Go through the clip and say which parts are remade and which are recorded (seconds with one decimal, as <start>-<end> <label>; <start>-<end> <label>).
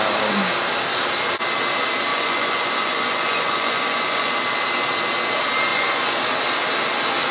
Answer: 0.0-2.1 recorded; 2.1-4.3 remade; 4.3-5.7 recorded; 5.7-6.2 remade; 6.2-7.3 recorded